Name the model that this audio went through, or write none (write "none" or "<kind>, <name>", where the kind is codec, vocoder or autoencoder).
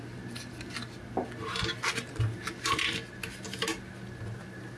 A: none